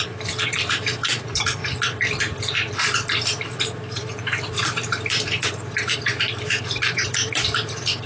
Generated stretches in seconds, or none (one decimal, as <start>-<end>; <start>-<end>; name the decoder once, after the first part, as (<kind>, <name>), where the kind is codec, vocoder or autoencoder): 0.0-8.1 (vocoder, BigVGAN v2)